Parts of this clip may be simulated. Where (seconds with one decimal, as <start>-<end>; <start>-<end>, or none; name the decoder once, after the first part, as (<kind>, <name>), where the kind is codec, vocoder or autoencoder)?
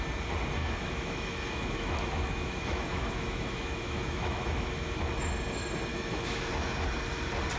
0.6-5.0 (autoencoder, DAC-VAE); 5.9-6.5